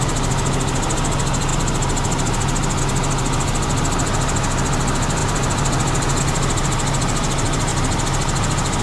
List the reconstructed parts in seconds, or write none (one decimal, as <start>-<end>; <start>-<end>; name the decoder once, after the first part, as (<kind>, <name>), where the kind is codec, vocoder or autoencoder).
5.2-6.2 (vocoder, BigVGAN v2)